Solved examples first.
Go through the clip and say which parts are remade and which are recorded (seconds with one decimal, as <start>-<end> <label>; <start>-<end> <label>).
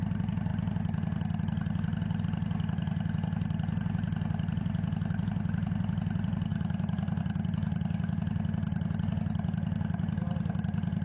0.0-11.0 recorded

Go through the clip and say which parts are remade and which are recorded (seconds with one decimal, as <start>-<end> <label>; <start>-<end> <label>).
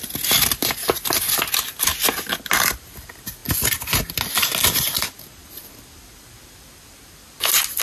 0.0-7.8 recorded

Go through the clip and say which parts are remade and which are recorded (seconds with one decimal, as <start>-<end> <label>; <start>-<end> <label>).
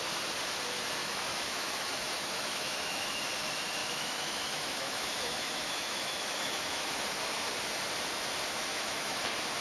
0.0-1.0 recorded; 1.0-3.2 remade; 3.2-3.8 recorded; 3.8-6.9 remade; 6.9-8.7 recorded; 8.7-9.2 remade; 9.2-9.6 recorded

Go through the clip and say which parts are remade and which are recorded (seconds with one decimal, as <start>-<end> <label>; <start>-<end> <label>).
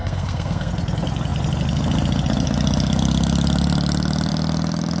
0.0-0.7 remade; 0.7-5.0 recorded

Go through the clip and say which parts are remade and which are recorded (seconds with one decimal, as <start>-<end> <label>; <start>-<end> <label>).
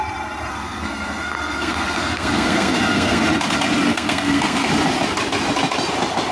0.0-0.5 recorded; 0.5-3.2 remade; 3.2-3.9 recorded; 3.9-4.7 remade; 4.7-6.3 recorded